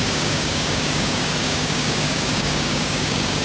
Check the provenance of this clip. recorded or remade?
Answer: remade